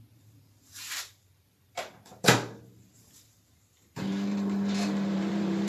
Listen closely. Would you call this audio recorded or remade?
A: remade